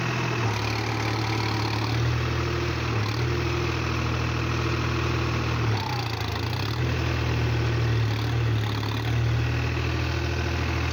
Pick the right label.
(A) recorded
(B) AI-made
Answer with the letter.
A